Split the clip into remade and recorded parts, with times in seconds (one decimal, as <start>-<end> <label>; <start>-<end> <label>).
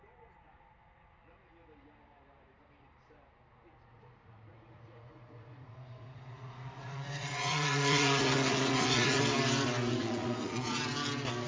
0.0-3.9 recorded; 3.9-9.2 remade; 9.2-10.0 recorded; 10.0-10.8 remade; 10.8-11.5 recorded